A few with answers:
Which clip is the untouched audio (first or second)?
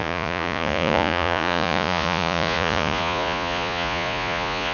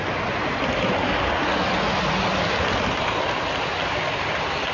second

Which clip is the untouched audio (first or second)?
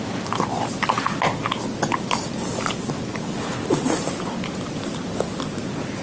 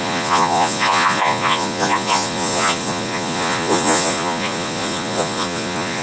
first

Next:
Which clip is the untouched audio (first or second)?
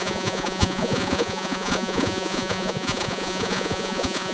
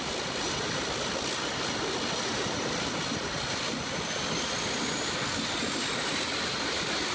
second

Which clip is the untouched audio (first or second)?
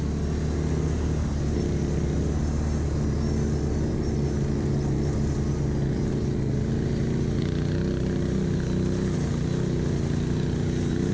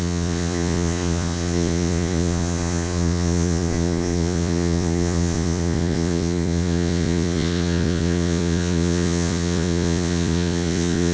first